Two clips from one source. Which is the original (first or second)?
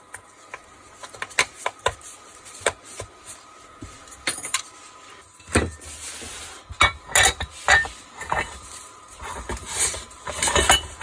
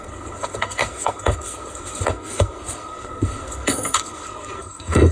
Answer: first